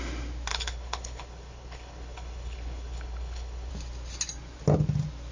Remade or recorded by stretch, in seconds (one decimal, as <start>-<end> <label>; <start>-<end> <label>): 0.0-0.5 recorded; 0.5-3.7 remade; 3.7-5.3 recorded